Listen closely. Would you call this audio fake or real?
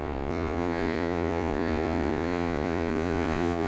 fake